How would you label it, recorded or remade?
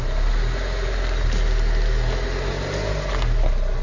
recorded